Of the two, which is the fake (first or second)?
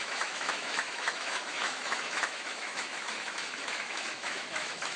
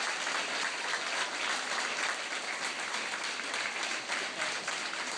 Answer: first